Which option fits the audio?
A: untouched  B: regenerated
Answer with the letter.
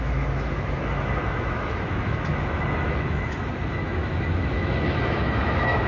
B